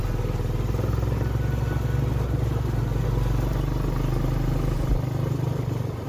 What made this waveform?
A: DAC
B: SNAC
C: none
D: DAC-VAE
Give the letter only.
C